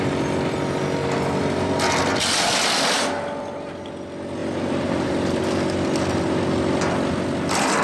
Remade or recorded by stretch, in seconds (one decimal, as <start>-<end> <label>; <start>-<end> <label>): 0.0-4.4 recorded; 4.4-5.1 remade; 5.1-7.8 recorded